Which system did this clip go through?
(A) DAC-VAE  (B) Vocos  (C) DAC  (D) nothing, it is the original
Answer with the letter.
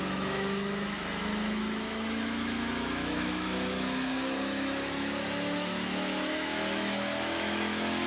A